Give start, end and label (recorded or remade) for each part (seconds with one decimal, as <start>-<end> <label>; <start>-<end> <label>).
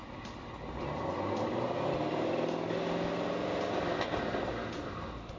0.0-5.4 recorded